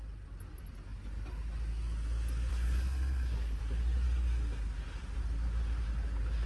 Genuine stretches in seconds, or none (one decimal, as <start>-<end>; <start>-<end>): 0.0-2.5; 3.6-6.5

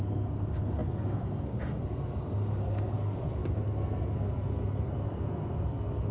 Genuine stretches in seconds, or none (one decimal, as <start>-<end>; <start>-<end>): none

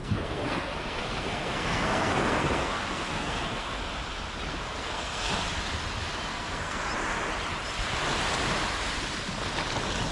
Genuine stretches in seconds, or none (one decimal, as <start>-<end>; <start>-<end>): 3.8-4.5; 5.3-6.3; 6.9-10.1

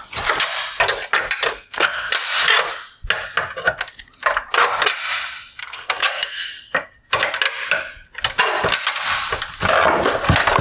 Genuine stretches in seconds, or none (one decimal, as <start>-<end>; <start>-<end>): 0.0-1.5; 2.1-5.6; 6.5-10.6

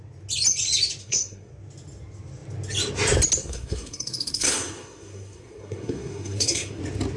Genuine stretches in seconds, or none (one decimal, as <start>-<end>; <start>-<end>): 0.0-1.0; 1.5-3.4; 6.8-7.2

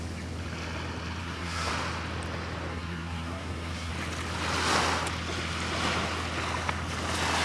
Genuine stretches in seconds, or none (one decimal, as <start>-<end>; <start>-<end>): 0.0-1.2; 1.7-2.7; 3.9-7.4